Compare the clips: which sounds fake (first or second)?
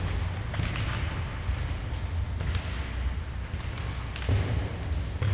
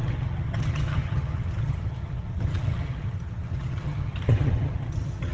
second